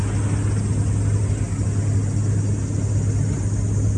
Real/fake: real